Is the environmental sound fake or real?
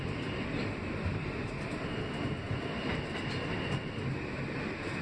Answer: real